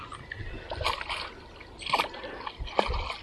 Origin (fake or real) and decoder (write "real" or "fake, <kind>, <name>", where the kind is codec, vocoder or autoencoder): real